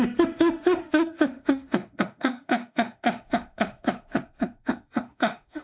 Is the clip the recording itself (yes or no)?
no